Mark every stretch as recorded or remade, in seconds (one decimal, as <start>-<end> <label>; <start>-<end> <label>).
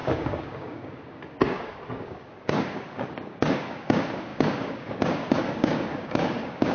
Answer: 0.0-6.7 remade